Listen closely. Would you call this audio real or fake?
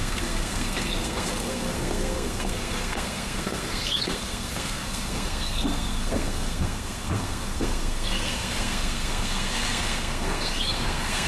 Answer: fake